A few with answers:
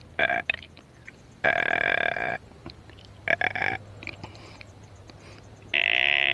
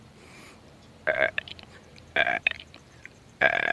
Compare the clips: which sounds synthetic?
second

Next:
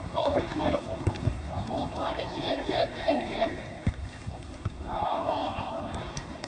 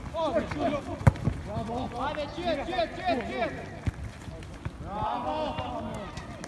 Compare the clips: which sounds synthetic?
first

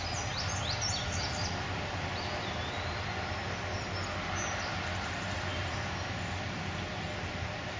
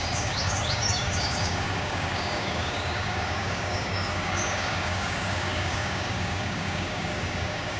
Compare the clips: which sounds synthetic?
second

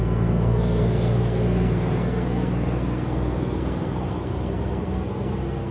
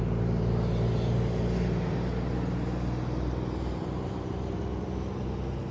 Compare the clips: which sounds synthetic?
first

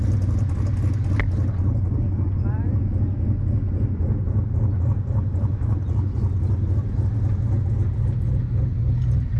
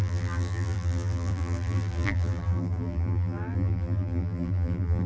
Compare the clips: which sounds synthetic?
second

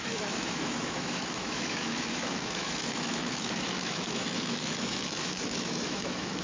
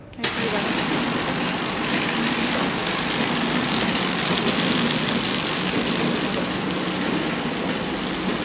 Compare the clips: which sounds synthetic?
first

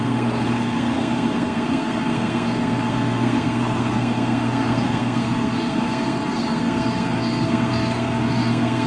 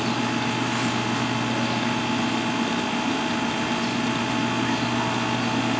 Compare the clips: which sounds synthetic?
first